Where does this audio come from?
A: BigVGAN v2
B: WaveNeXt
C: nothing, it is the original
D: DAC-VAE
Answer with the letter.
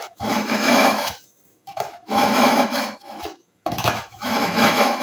D